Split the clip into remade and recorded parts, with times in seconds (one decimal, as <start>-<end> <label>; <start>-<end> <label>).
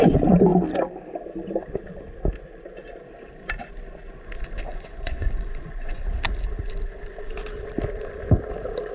0.0-4.7 recorded; 4.7-6.0 remade; 6.0-8.9 recorded